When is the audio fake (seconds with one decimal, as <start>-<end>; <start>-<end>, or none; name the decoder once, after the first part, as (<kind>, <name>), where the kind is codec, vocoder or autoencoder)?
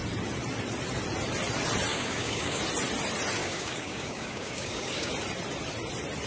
1.9-2.6 (codec, DAC); 3.4-5.1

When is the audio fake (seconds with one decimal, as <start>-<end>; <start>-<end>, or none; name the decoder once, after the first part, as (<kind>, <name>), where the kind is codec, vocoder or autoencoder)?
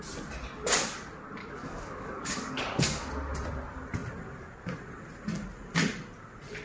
1.4-3.1 (codec, DAC)